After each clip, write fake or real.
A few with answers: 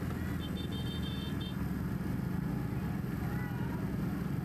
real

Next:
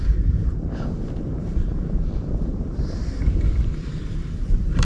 fake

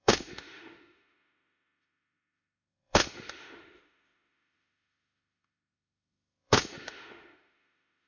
fake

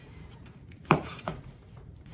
fake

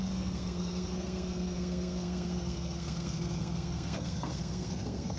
fake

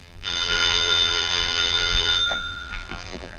fake